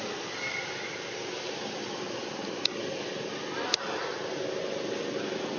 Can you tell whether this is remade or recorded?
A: recorded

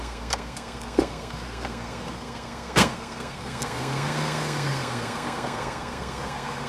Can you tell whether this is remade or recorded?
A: remade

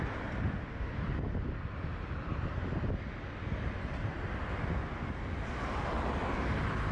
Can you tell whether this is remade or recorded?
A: recorded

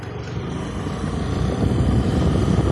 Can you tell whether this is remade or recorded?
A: recorded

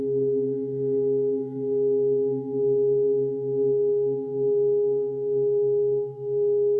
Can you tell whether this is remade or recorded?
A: remade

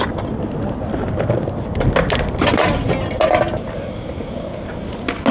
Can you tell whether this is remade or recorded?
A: recorded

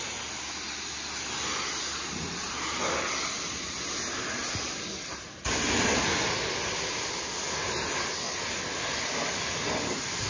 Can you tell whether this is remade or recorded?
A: recorded